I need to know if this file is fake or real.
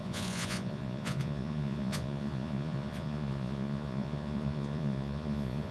fake